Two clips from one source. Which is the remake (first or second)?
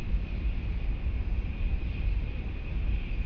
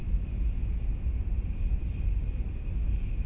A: first